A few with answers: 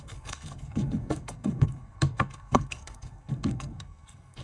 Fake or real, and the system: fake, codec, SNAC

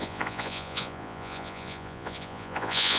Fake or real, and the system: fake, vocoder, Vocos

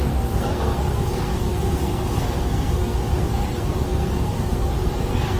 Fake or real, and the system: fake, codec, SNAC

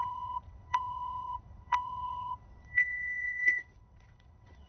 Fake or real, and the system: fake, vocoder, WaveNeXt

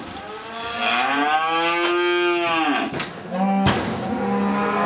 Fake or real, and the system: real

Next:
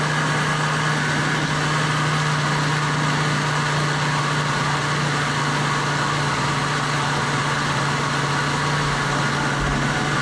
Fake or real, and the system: real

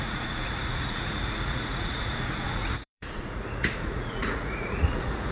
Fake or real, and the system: fake, vocoder, Vocos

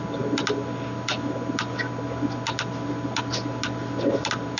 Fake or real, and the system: real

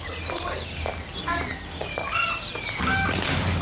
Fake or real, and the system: real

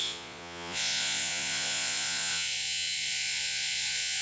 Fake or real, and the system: fake, vocoder, Vocos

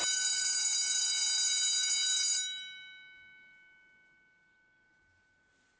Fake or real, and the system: real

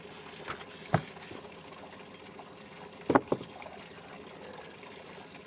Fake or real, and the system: real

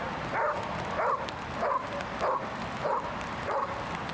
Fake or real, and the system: real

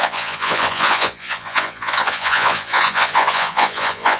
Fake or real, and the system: fake, vocoder, Vocos